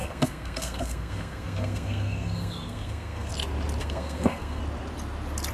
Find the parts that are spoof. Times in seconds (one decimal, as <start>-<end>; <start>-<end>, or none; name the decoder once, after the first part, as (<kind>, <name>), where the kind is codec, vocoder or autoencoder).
0.0-3.3 (codec, SNAC); 3.8-4.6